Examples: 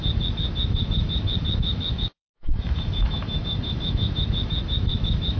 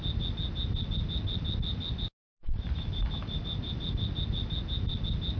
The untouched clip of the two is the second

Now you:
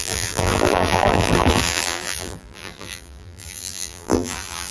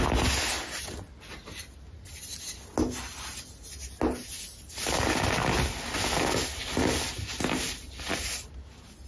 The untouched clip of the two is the second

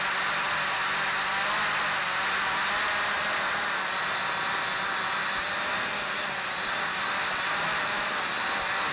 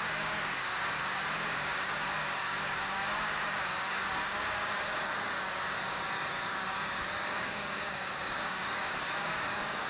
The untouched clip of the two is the first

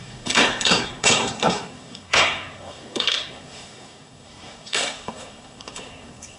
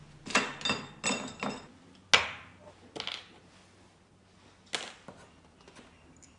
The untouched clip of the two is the second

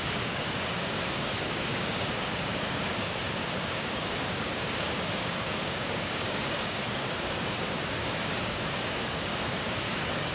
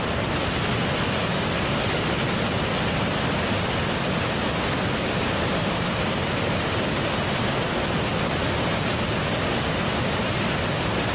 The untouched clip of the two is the second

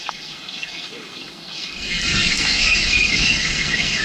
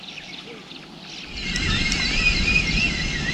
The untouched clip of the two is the second